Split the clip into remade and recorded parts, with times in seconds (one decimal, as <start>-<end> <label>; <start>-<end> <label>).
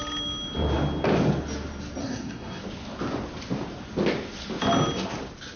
0.0-2.0 recorded; 2.0-2.6 remade; 2.6-5.6 recorded